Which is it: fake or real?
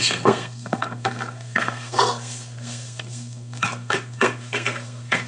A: fake